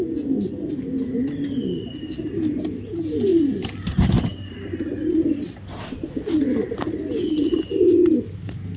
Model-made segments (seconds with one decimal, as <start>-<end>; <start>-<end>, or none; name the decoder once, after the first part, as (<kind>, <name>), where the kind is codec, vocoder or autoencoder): 3.3-3.8 (vocoder, BigVGAN v2)